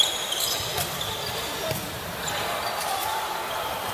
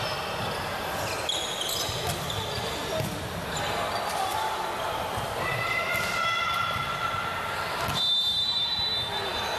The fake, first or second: first